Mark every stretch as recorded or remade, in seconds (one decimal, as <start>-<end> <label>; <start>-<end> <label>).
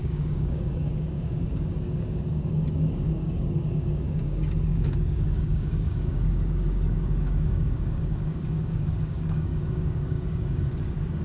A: 0.0-11.2 remade